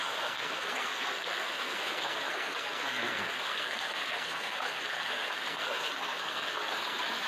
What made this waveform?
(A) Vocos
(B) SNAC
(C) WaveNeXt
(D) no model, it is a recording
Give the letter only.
B